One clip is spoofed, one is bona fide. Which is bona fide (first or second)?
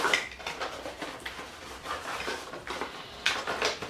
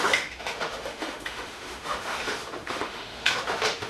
first